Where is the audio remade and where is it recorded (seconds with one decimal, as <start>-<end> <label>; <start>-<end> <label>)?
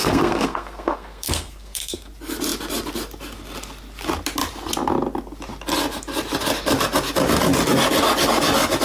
0.0-2.1 remade; 2.1-8.8 recorded